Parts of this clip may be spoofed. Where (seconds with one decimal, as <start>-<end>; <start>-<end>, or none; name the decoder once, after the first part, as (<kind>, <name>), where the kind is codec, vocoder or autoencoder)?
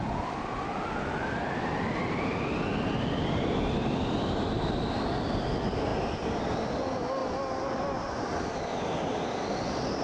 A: none